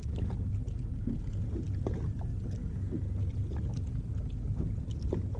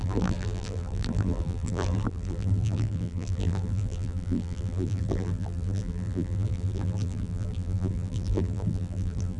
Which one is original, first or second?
first